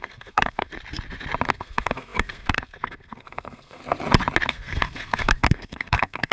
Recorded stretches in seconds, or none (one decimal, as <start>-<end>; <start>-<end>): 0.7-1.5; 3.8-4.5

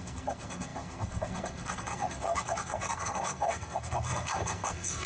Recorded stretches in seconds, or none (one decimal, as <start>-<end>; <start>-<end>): none

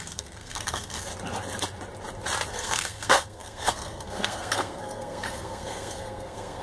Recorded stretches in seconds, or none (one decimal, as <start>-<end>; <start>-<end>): 1.1-2.5

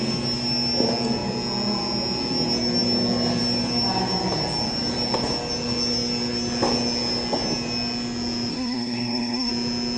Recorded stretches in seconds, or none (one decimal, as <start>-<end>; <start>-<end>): 0.0-8.5; 9.5-10.0

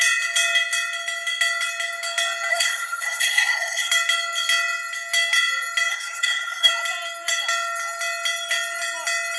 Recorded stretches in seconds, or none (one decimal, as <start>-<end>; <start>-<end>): 0.0-2.5; 3.9-5.9; 6.7-9.4

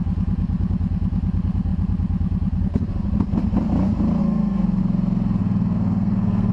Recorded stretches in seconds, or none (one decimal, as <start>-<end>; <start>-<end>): 0.0-4.2; 4.8-5.4

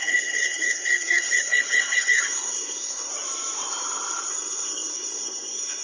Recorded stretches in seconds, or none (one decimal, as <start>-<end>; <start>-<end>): 3.1-4.3

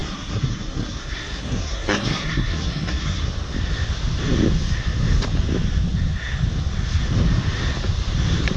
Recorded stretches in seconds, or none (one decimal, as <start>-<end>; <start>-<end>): 3.3-8.6